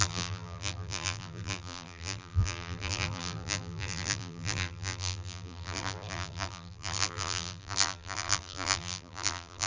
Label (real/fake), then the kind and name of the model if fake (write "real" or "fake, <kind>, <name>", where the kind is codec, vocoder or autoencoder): fake, vocoder, BigVGAN v2